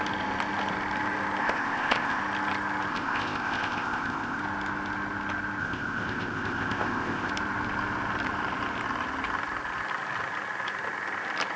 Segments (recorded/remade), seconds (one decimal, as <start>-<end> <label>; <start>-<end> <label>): 0.0-1.4 recorded; 1.4-2.2 remade; 2.2-2.9 recorded; 2.9-4.4 remade; 4.4-5.6 recorded; 5.6-7.3 remade; 7.3-11.6 recorded